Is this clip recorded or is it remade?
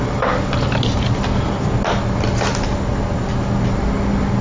recorded